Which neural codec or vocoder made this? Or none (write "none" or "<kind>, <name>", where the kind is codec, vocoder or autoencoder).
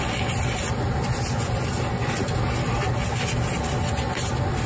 none